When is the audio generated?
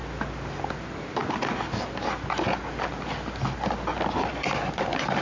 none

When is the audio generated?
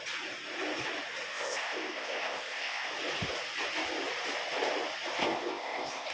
1.3-2.9 (codec, ZipCodec); 5.2-6.1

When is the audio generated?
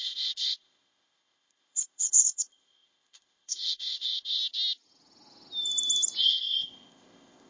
0.0-4.4 (codec, ZipCodec); 6.2-7.5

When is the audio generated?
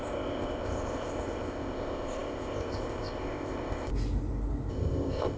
0.0-3.9 (codec, ZipCodec); 4.7-5.4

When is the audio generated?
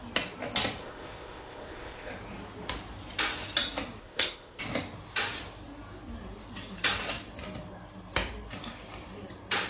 0.8-2.1 (codec, ZipCodec); 4.0-4.6